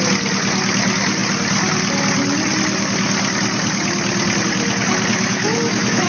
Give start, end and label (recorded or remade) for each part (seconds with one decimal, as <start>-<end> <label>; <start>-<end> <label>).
0.0-5.1 recorded; 5.1-6.1 remade